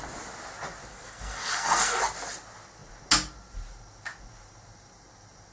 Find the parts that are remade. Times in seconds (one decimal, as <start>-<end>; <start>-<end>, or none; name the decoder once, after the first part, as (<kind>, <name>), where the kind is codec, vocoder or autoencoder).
0.9-2.0 (codec, SNAC)